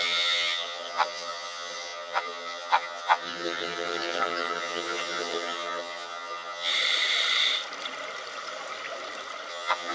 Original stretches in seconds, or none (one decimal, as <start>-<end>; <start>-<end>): 6.7-9.5